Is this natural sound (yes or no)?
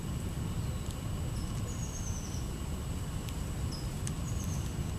yes